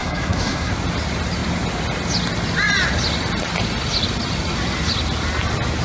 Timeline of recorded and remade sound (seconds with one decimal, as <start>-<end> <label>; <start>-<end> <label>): 0.0-0.7 remade; 0.7-5.8 recorded